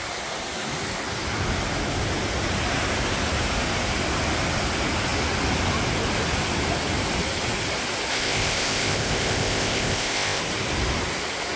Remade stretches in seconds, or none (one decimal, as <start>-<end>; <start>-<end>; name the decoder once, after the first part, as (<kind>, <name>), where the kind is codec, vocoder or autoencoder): 8.1-10.4 (codec, ZipCodec)